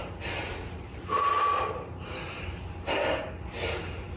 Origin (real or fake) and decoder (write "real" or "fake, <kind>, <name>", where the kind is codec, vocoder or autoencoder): real